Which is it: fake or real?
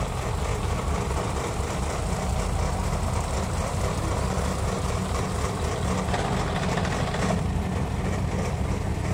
fake